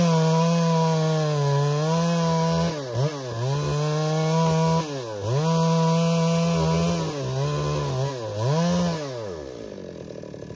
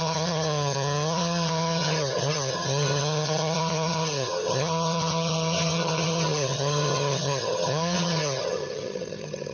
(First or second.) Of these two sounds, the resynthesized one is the second